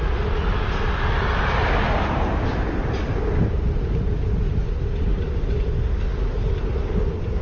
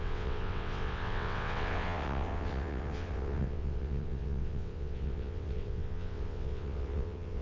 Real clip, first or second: first